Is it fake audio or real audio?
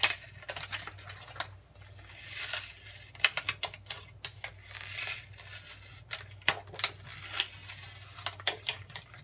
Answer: real